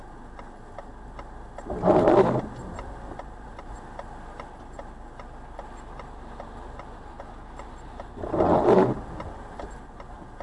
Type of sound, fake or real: real